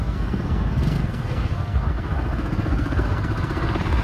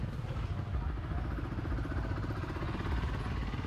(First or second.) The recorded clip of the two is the second